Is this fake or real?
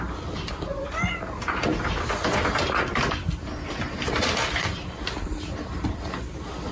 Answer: real